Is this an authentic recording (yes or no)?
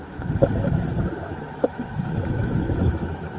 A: no